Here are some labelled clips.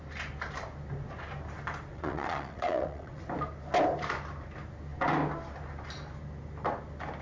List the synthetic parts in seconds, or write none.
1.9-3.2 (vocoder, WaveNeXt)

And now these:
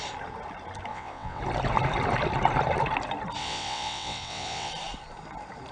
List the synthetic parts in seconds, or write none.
0.9-1.4 (vocoder, WaveNeXt); 3.4-4.7